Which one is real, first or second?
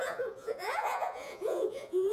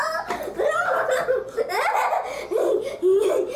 second